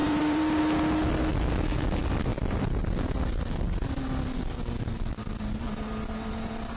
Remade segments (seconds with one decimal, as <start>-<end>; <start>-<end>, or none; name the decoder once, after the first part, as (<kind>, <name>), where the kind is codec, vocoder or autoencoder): 0.0-0.6 (vocoder, BigVGAN v2)

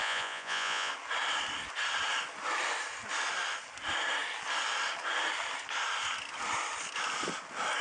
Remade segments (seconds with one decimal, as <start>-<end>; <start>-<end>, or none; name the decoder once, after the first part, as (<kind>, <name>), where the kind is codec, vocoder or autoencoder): 0.0-0.9 (vocoder, Vocos)